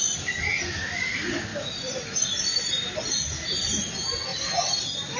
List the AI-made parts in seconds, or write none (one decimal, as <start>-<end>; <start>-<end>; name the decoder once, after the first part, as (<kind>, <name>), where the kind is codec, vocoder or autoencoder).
none

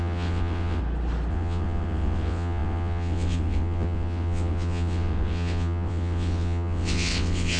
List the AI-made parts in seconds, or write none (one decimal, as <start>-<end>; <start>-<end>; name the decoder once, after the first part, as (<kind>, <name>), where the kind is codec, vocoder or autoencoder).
0.0-0.8 (vocoder, WaveNeXt); 1.3-7.6